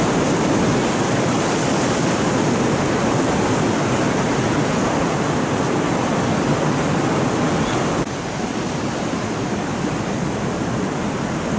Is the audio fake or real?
real